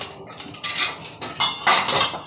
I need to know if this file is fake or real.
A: real